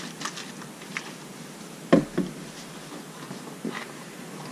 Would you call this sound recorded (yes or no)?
yes